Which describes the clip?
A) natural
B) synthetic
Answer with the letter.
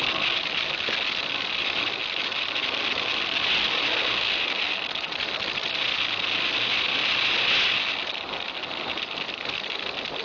A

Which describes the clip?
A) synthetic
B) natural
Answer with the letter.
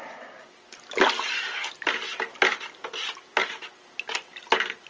B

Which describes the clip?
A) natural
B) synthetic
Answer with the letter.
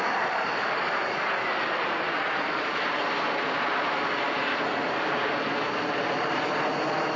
A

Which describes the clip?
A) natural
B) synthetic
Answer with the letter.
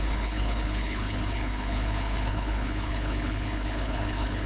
B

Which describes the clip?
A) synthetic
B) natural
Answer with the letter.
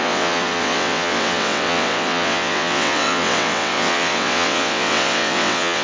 A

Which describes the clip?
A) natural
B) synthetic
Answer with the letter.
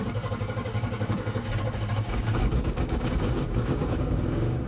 B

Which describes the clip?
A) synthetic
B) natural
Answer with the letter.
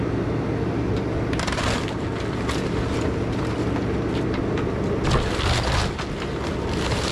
B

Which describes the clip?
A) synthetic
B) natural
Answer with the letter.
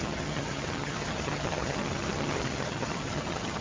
A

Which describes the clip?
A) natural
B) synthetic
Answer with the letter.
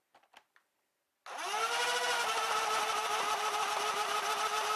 A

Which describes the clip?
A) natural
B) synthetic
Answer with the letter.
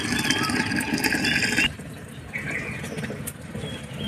B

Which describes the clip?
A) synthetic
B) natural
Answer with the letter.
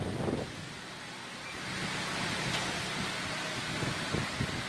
B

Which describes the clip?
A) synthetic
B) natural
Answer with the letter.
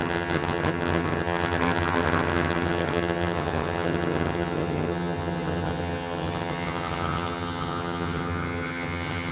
A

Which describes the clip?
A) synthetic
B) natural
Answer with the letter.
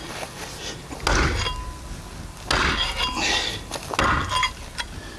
B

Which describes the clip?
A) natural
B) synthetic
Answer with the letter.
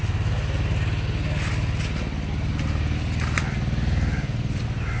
A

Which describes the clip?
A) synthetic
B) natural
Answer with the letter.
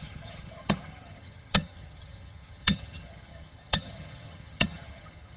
A